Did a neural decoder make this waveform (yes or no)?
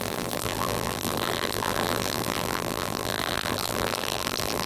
yes